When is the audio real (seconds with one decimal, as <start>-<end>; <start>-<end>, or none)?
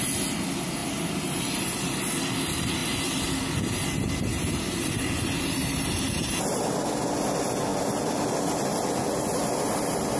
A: 0.0-4.3; 6.4-10.2